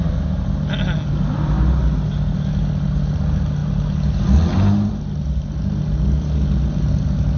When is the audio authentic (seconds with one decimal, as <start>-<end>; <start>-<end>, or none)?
0.0-7.4